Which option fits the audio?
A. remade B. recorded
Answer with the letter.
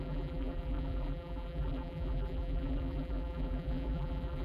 A